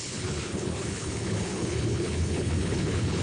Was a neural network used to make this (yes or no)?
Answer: yes